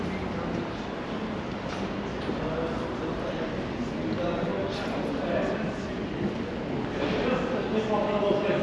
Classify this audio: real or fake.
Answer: real